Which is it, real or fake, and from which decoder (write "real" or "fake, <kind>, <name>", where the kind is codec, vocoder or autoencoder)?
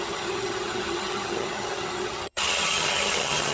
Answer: fake, vocoder, HiFi-GAN